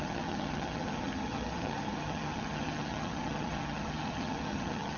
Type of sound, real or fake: fake